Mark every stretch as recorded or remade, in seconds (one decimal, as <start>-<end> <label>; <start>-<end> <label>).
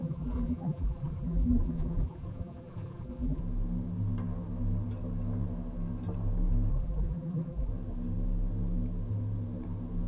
0.0-3.4 remade; 3.4-6.7 recorded; 6.7-7.7 remade; 7.7-10.1 recorded